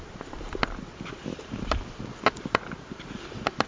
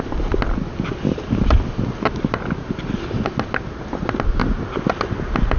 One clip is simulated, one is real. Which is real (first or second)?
second